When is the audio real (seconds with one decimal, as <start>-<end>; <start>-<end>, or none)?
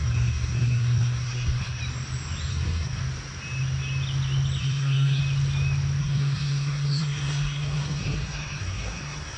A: 1.8-2.5; 3.0-4.6; 5.2-6.0